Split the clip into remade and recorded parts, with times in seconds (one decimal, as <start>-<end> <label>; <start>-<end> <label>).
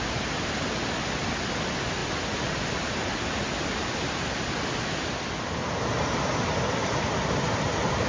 0.0-8.1 recorded